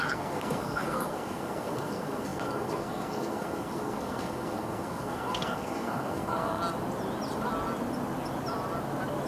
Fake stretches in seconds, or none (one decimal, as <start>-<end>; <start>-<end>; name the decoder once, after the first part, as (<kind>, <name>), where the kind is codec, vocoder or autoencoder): 0.0-6.6 (codec, SNAC)